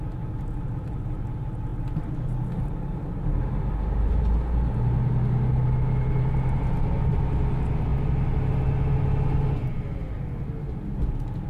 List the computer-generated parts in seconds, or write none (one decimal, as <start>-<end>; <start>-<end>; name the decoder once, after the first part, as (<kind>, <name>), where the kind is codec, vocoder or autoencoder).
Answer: none